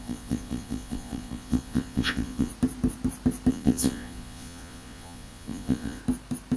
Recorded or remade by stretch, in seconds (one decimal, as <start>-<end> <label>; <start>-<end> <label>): 0.0-2.5 remade; 2.5-3.5 recorded; 3.5-6.0 remade; 6.0-6.6 recorded